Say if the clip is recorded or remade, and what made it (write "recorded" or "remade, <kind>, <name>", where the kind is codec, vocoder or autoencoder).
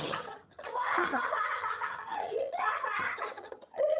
remade, vocoder, HiFi-GAN